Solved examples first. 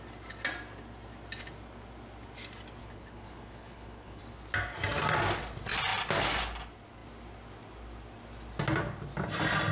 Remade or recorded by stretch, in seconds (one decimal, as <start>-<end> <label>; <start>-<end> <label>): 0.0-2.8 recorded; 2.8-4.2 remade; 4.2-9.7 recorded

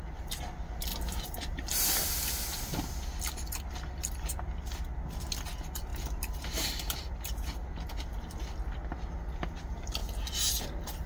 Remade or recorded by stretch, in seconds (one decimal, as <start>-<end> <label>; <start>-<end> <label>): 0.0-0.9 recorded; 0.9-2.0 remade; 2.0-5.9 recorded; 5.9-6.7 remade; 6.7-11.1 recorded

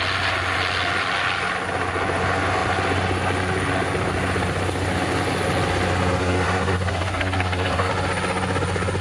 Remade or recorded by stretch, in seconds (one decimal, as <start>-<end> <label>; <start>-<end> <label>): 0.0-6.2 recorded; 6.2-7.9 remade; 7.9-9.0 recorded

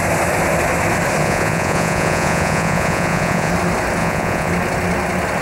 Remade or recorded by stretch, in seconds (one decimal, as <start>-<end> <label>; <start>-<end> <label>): 0.0-1.2 recorded; 1.2-3.5 remade; 3.5-4.0 recorded; 4.0-4.5 remade; 4.5-5.4 recorded